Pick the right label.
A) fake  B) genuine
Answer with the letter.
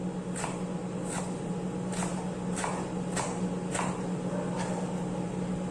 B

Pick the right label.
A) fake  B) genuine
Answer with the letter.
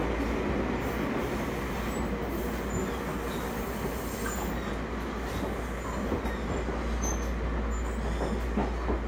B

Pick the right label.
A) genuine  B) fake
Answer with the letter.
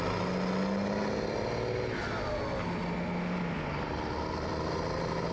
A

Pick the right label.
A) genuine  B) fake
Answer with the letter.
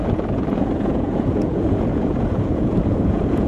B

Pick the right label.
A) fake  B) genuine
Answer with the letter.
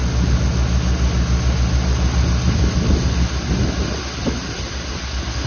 B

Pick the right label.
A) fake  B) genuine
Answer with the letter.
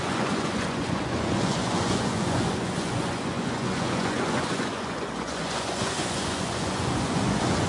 A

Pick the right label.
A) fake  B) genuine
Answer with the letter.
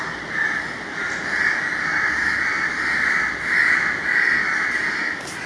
B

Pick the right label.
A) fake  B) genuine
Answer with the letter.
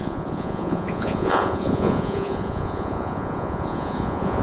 A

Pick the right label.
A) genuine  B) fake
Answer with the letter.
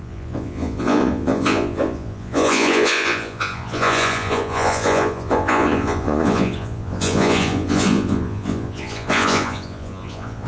B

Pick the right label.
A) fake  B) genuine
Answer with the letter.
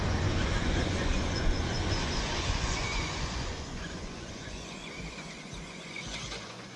A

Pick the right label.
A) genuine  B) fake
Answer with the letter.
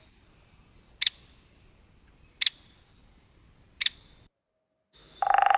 A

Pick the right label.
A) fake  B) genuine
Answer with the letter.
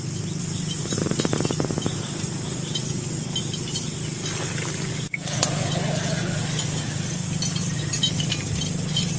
B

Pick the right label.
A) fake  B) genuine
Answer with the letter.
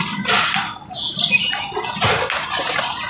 B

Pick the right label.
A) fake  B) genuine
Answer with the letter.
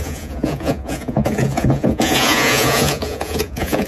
A